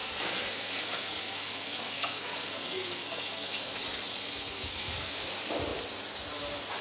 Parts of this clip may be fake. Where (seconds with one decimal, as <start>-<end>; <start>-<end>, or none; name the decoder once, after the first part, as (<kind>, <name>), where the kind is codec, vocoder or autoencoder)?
0.0-3.8 (codec, SNAC); 4.2-5.3